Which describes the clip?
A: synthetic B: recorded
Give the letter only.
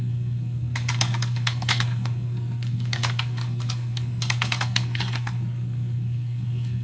A